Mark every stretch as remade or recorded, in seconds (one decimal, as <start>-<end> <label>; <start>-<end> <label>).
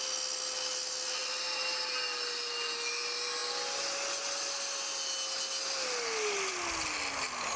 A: 0.0-7.6 recorded